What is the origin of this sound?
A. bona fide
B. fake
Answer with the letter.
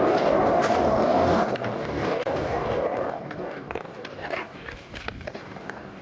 B